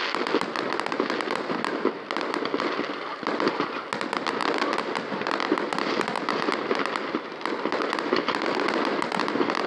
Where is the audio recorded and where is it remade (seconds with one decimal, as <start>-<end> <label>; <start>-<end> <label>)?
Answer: 0.0-9.7 recorded